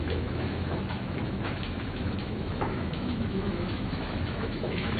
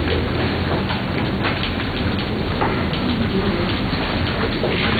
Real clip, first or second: second